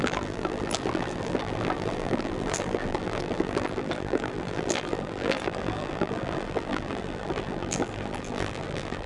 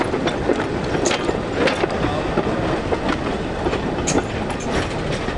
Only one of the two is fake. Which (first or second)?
first